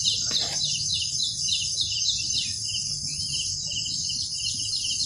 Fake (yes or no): no